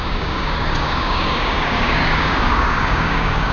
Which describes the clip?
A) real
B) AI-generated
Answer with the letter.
B